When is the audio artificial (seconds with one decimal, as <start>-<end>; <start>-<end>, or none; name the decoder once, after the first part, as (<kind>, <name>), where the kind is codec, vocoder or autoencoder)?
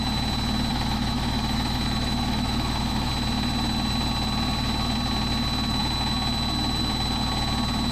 0.7-3.1 (autoencoder, DAC-VAE)